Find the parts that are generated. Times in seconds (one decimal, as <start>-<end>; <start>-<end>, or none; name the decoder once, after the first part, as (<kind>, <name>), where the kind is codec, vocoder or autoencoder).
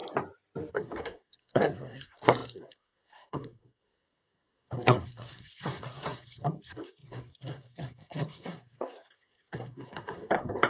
0.7-10.7 (codec, SNAC)